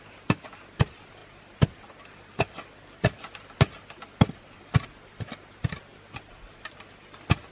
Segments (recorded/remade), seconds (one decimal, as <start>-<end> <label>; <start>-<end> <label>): 0.0-7.5 recorded